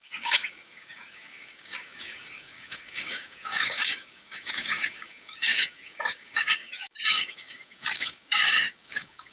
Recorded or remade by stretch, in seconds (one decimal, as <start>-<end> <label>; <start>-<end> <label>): 0.0-9.3 remade